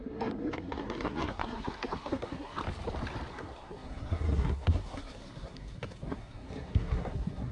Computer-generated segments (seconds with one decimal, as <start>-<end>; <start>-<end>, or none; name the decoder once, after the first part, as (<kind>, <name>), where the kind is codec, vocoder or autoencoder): 0.0-2.6 (codec, SNAC); 3.3-7.5